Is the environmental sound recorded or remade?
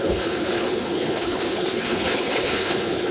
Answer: remade